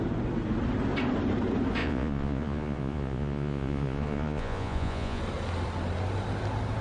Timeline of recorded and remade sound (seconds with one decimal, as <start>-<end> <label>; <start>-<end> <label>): 0.0-1.8 recorded; 1.8-5.2 remade; 5.2-6.8 recorded